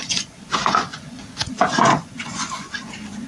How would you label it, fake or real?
fake